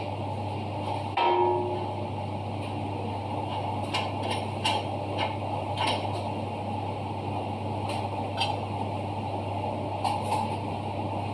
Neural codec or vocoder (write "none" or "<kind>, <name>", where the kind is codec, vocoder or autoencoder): none